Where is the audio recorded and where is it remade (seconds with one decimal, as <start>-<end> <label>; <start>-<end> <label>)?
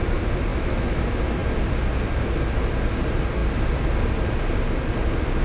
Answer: 0.0-0.5 recorded; 0.5-1.0 remade; 1.0-5.4 recorded